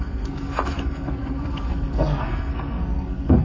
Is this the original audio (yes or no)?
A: no